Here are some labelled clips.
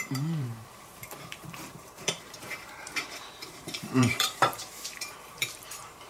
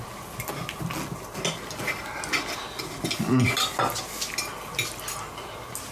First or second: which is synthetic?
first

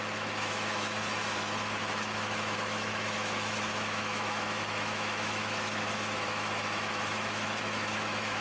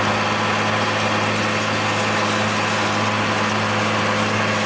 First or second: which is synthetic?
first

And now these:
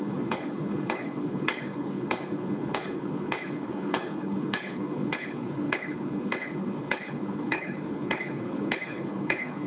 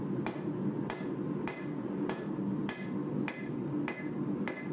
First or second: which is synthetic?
first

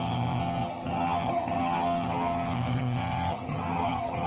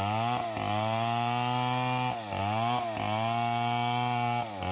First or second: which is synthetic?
first